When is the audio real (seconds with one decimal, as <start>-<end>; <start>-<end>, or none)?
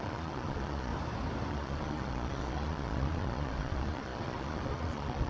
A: 0.9-1.5